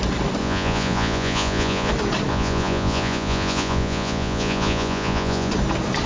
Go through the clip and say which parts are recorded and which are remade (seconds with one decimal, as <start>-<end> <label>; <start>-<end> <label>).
0.0-0.4 recorded; 0.4-1.9 remade; 1.9-2.3 recorded; 2.3-5.5 remade; 5.5-6.1 recorded